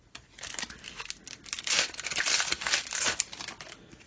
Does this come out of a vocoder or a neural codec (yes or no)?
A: no